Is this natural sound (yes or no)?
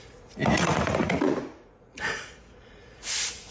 no